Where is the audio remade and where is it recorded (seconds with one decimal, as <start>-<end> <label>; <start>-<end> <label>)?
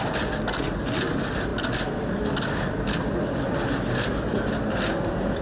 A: 0.0-5.4 recorded